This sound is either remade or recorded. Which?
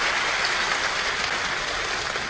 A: recorded